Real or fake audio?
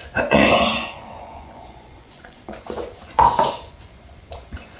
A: fake